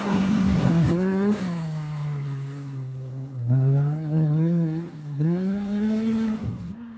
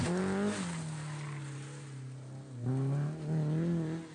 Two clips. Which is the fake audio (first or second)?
first